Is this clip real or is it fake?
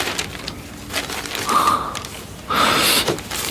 real